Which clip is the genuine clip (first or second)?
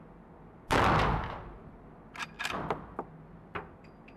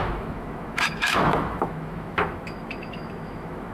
first